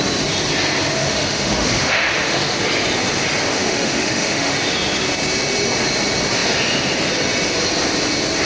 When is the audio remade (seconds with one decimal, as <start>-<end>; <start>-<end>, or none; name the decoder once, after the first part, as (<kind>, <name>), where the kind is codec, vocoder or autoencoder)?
1.0-2.6 (autoencoder, DAC-VAE); 3.5-4.5